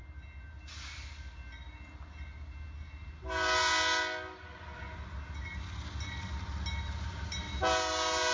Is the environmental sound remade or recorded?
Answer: recorded